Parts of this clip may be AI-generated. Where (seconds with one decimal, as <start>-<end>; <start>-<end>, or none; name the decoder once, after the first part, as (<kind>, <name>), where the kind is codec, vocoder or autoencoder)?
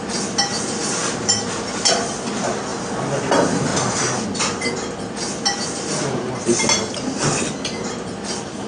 none